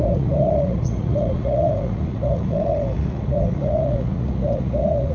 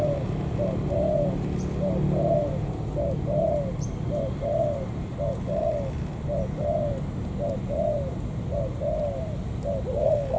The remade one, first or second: first